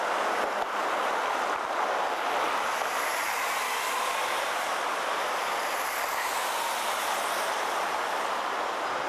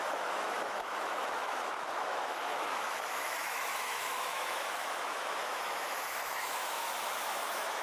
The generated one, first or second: second